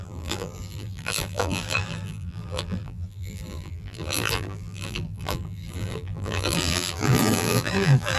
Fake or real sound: fake